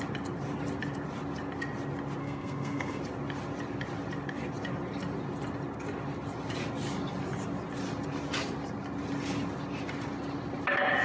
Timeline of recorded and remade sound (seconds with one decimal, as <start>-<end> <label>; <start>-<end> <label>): 0.0-2.2 recorded; 2.2-3.0 remade; 3.0-11.0 recorded